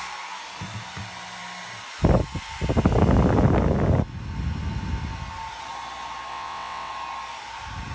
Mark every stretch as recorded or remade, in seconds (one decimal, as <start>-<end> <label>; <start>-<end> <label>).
0.0-6.3 recorded; 6.3-6.9 remade; 6.9-7.9 recorded